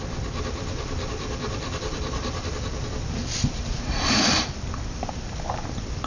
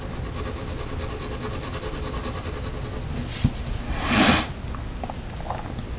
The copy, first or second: first